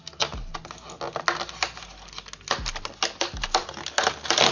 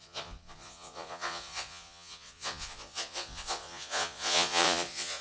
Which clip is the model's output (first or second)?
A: second